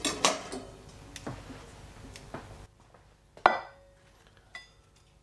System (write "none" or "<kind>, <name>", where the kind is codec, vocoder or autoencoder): none